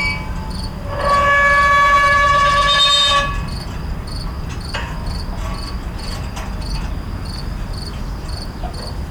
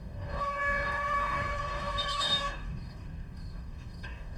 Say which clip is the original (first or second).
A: first